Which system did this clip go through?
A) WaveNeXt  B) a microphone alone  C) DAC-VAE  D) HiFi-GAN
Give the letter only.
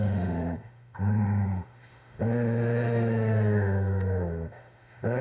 C